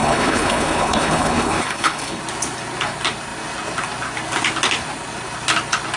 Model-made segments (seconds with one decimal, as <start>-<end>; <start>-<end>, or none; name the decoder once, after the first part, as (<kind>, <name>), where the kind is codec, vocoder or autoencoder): 0.0-2.2 (codec, HILCodec)